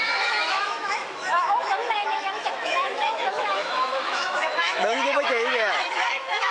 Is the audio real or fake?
fake